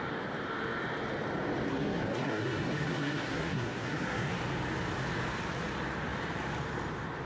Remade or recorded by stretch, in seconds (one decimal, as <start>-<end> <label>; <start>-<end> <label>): 0.0-1.7 recorded; 1.7-4.3 remade; 4.3-7.3 recorded